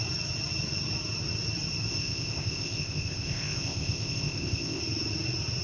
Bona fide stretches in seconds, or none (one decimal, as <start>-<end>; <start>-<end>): 0.0-1.9; 4.8-5.6